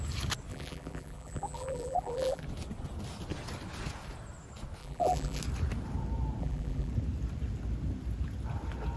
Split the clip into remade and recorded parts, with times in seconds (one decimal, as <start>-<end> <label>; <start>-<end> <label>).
0.0-0.5 recorded; 0.5-2.4 remade; 2.4-4.8 recorded; 4.8-5.4 remade; 5.4-6.4 recorded; 6.4-6.9 remade; 6.9-9.0 recorded